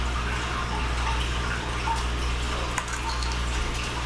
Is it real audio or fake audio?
real